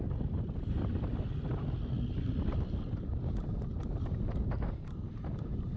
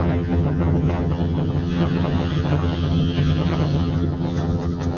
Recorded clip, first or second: first